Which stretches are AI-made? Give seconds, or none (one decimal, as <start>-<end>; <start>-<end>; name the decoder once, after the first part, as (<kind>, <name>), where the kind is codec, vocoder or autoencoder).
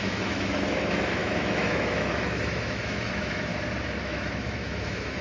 0.0-3.5 (autoencoder, DAC-VAE); 4.0-5.2